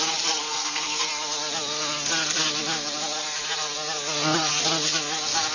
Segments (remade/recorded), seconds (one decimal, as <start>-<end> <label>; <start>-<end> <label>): 0.0-0.5 recorded; 0.5-1.0 remade; 1.0-5.5 recorded

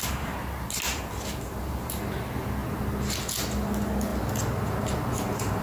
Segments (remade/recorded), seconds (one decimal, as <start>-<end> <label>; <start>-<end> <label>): 0.0-5.6 recorded

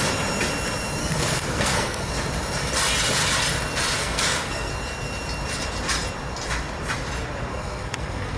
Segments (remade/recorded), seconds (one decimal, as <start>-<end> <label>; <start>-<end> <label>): 0.0-1.0 recorded; 1.0-2.1 remade; 2.1-4.0 recorded; 4.0-4.7 remade; 4.7-7.5 recorded; 7.5-8.4 remade

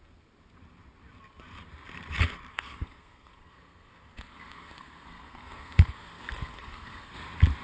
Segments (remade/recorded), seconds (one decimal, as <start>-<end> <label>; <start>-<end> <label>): 0.0-2.5 recorded; 2.5-7.1 remade; 7.1-7.6 recorded

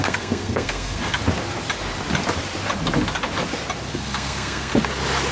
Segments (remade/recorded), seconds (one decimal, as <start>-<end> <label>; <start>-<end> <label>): 0.0-1.2 remade; 1.2-3.9 recorded; 3.9-4.7 remade; 4.7-5.3 recorded

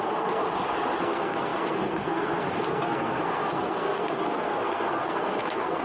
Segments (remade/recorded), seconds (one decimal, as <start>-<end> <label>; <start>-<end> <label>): 0.0-0.4 remade; 0.4-1.0 recorded; 1.0-5.8 remade

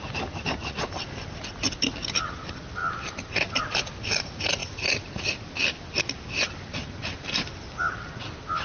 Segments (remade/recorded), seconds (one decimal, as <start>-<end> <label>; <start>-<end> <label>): 0.0-8.6 recorded